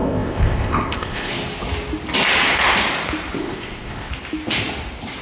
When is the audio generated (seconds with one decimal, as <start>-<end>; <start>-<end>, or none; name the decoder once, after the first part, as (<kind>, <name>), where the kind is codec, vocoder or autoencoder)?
0.0-1.3 (codec, ZipCodec); 3.4-4.1